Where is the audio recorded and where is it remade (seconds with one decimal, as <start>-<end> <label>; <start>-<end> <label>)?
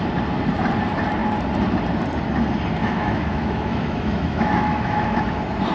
0.0-2.8 recorded; 2.8-5.2 remade; 5.2-5.7 recorded